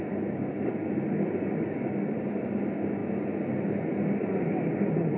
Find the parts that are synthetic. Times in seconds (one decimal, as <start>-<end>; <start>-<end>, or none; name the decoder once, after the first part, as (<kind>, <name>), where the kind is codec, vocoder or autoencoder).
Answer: none